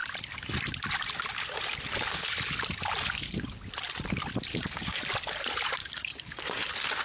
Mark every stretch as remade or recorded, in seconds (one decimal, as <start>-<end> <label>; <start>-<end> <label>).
0.0-4.5 recorded; 4.5-5.0 remade; 5.0-5.8 recorded; 5.8-6.4 remade; 6.4-7.0 recorded

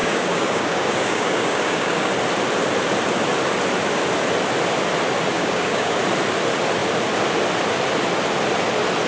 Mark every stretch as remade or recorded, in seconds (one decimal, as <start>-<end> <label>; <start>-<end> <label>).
0.0-2.1 remade; 2.1-5.4 recorded; 5.4-6.0 remade; 6.0-9.1 recorded

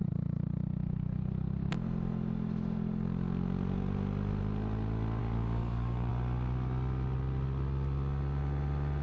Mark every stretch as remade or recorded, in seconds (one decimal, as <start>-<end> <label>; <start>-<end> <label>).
0.0-5.2 recorded; 5.2-6.1 remade; 6.1-9.0 recorded

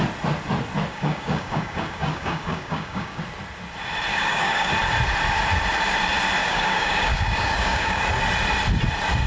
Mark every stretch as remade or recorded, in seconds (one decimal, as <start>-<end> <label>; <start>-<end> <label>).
0.0-0.9 recorded; 0.9-3.2 remade; 3.2-4.1 recorded; 4.1-4.7 remade; 4.7-6.4 recorded; 6.4-8.0 remade; 8.0-9.3 recorded

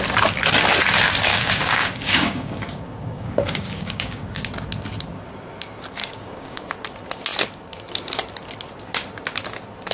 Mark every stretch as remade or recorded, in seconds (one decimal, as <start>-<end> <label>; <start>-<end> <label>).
0.0-1.3 recorded; 1.3-4.3 remade; 4.3-6.0 recorded; 6.0-6.7 remade; 6.7-9.9 recorded

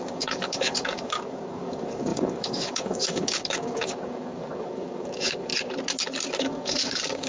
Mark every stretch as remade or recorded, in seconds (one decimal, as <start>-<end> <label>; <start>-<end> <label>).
0.0-5.5 remade; 5.5-6.4 recorded; 6.4-7.3 remade

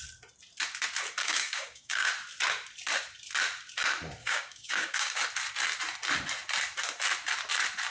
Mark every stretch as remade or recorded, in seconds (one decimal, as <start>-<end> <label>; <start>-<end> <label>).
0.0-1.2 recorded; 1.2-2.1 remade; 2.1-4.2 recorded; 4.2-5.2 remade; 5.2-7.9 recorded